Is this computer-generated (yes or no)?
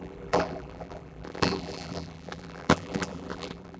yes